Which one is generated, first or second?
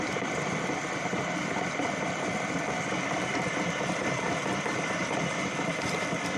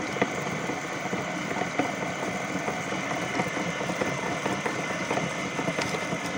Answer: first